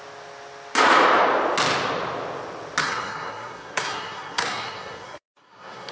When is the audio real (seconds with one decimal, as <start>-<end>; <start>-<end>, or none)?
0.0-2.8